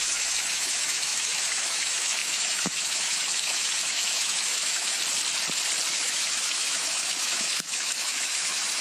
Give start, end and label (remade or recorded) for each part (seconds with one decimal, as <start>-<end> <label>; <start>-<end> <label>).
0.0-5.0 remade; 5.0-5.9 recorded; 5.9-8.8 remade